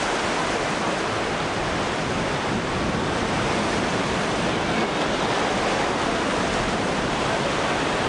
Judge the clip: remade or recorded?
recorded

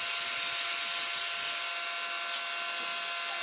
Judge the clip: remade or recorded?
recorded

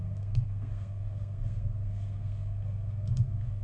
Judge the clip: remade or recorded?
remade